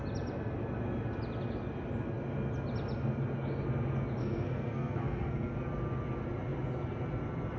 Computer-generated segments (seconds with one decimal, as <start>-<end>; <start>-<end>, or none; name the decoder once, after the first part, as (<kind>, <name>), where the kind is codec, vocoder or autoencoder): 4.2-5.5 (codec, SNAC)